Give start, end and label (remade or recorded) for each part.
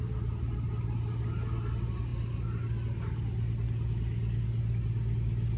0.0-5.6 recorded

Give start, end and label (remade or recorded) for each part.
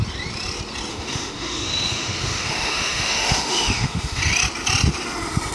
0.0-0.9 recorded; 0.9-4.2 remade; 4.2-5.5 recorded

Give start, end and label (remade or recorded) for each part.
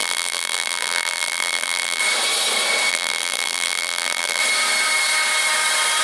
0.0-2.0 remade; 2.0-2.9 recorded; 2.9-4.4 remade; 4.4-6.0 recorded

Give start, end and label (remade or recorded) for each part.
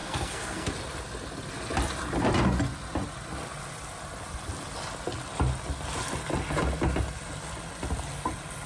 0.0-0.7 remade; 0.7-8.7 recorded